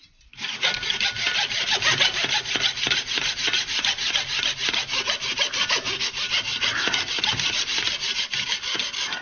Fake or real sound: real